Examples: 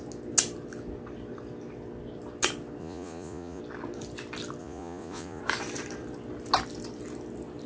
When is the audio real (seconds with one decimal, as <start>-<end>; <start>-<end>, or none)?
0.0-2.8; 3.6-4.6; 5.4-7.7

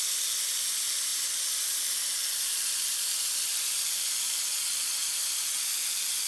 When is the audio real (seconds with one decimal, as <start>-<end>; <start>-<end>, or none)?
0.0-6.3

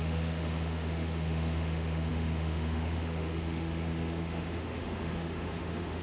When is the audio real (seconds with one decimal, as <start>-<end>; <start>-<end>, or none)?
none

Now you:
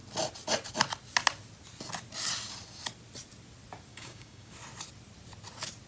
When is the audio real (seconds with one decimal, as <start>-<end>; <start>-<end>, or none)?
0.0-3.9; 4.5-5.9

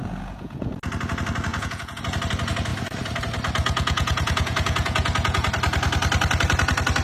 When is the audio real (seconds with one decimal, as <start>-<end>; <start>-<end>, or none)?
0.7-1.5; 2.0-3.6; 5.5-7.0

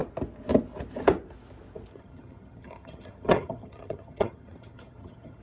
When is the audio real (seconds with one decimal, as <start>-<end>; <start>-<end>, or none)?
0.0-1.9